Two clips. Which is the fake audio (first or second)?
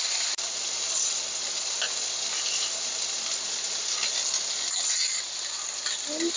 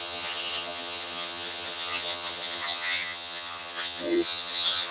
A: second